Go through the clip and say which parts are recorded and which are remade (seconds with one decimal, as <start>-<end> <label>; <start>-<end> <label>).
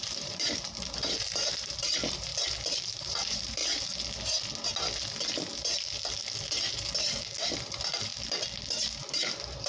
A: 0.0-2.3 remade; 2.3-2.9 recorded; 2.9-3.6 remade; 3.6-7.7 recorded; 7.7-8.1 remade; 8.1-9.1 recorded; 9.1-9.7 remade